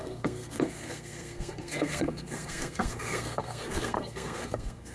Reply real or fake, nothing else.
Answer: fake